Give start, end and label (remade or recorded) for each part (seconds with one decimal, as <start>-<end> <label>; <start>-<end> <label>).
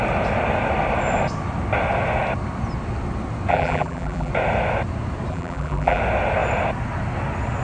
0.0-3.5 recorded; 3.5-4.3 remade; 4.3-5.3 recorded; 5.3-6.0 remade; 6.0-7.6 recorded